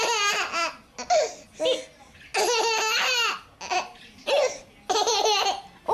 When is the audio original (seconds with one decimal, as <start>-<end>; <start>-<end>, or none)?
0.0-5.9